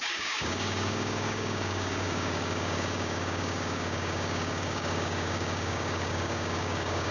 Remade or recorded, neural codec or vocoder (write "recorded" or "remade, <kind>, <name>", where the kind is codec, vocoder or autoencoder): remade, codec, DAC